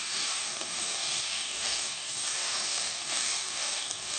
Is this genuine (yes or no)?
no